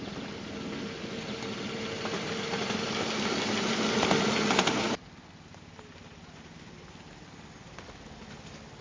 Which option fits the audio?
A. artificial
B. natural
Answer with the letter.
B